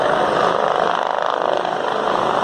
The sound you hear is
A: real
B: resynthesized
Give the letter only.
A